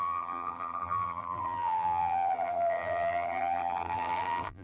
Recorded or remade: remade